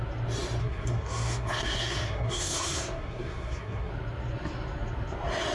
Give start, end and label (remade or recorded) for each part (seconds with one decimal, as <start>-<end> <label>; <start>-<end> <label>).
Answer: 0.0-0.6 recorded; 0.6-3.9 remade; 3.9-5.5 recorded